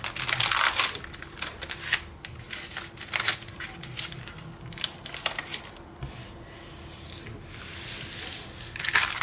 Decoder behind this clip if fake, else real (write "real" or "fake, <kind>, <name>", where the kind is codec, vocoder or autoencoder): real